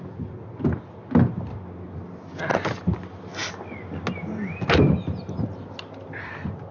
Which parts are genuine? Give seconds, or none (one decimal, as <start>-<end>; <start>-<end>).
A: 0.0-6.7